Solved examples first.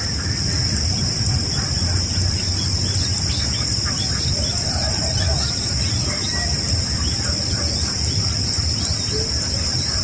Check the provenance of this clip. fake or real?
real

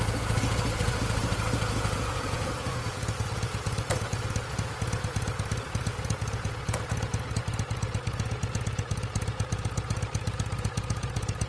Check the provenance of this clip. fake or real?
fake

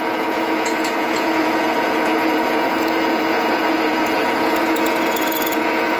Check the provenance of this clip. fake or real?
fake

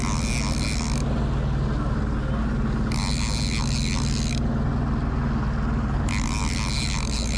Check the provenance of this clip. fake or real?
real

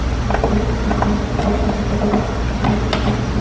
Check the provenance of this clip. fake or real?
real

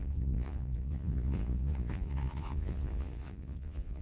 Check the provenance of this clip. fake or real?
fake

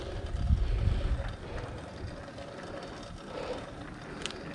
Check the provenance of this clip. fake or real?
real